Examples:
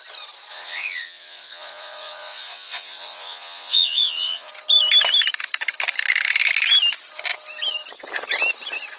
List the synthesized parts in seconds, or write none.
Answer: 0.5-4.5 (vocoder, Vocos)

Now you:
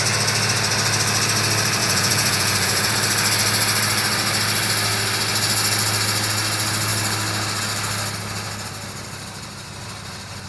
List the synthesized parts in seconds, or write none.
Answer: 1.8-2.9 (vocoder, Vocos)

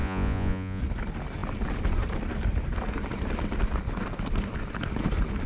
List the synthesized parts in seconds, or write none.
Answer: 0.0-0.8 (vocoder, Vocos)